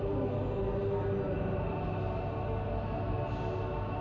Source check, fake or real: real